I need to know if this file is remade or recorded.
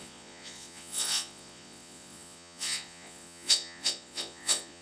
remade